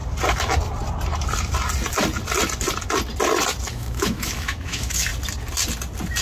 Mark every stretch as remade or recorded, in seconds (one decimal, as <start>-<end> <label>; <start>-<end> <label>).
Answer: 0.0-3.7 recorded; 3.7-5.1 remade; 5.1-6.2 recorded